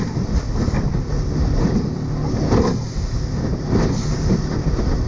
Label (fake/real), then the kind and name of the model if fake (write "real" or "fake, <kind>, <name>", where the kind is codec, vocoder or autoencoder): real